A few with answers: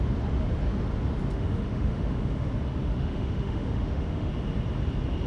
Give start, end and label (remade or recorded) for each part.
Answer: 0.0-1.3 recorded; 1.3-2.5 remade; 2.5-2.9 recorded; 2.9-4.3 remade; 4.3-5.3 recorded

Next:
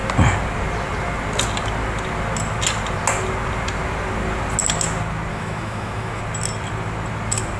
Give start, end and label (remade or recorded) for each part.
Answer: 0.0-5.3 recorded; 5.3-6.2 remade; 6.2-7.6 recorded

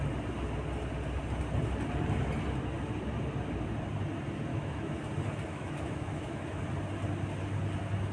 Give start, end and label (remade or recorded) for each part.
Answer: 0.0-4.5 recorded; 4.5-5.1 remade; 5.1-5.5 recorded; 5.5-6.6 remade; 6.6-8.1 recorded

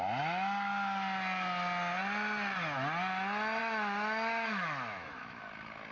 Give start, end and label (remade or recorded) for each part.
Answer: 0.0-3.6 recorded; 3.6-5.5 remade; 5.5-5.9 recorded

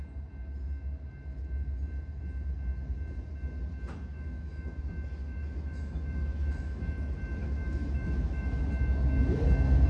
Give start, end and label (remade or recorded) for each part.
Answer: 0.0-4.1 recorded; 4.1-4.8 remade; 4.8-5.2 recorded; 5.2-6.9 remade; 6.9-7.4 recorded; 7.4-8.6 remade; 8.6-9.9 recorded